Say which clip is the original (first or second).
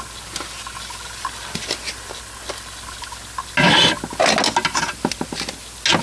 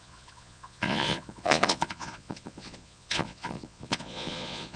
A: first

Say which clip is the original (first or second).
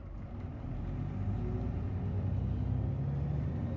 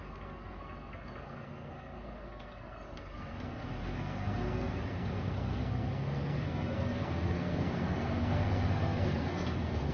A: first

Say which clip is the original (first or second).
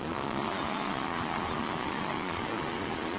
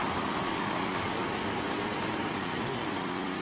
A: second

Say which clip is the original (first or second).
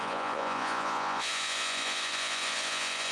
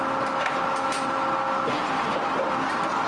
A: second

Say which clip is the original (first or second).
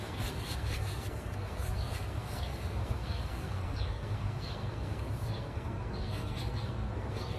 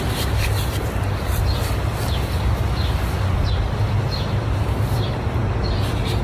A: second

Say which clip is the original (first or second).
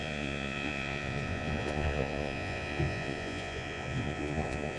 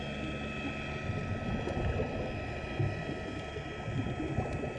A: second